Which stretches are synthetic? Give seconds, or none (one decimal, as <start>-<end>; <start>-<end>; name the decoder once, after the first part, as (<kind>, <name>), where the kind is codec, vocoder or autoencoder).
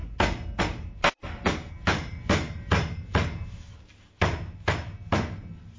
none